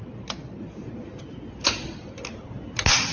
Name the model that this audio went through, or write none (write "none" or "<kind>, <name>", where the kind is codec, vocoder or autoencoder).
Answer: none